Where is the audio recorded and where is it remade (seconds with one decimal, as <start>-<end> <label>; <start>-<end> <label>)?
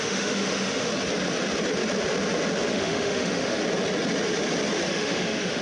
0.0-0.9 remade; 0.9-2.7 recorded; 2.7-3.6 remade; 3.6-4.9 recorded; 4.9-5.6 remade